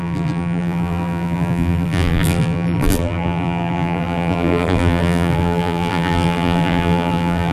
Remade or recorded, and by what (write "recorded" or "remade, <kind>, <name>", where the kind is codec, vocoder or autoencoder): remade, vocoder, BigVGAN v2